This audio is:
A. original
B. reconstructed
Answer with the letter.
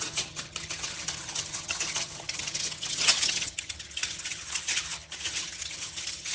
B